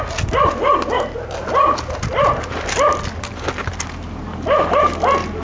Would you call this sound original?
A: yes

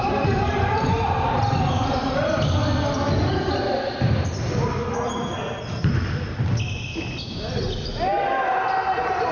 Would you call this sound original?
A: yes